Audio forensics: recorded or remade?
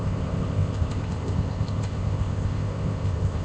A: remade